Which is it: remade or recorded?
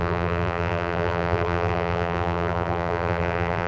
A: remade